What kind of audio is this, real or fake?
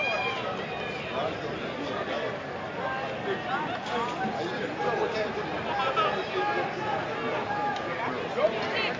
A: real